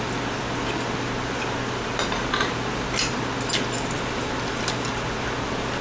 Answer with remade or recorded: recorded